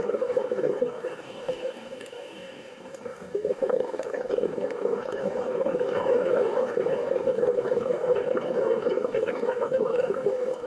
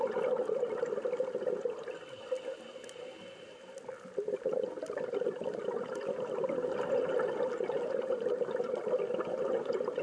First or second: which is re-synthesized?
first